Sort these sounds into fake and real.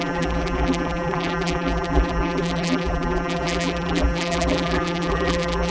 fake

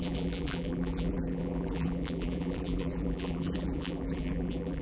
fake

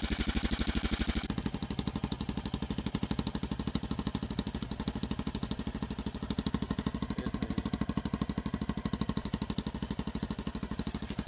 real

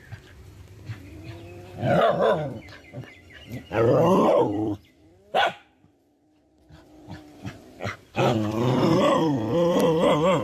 fake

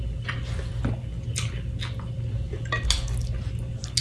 real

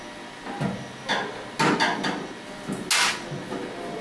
real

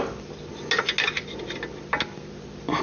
real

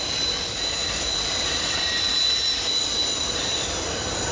fake